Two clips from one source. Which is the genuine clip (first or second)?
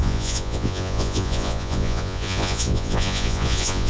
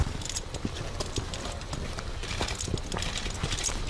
second